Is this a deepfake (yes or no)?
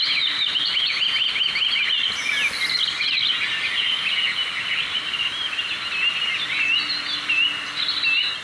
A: no